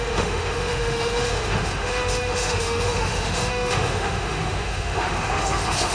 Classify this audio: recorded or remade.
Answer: remade